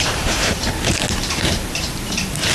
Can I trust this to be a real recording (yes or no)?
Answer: no